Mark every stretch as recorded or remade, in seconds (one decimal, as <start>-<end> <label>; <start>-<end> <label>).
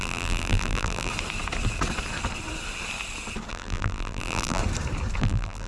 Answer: 0.0-1.1 remade; 1.1-3.5 recorded; 3.5-4.6 remade; 4.6-5.2 recorded; 5.2-5.7 remade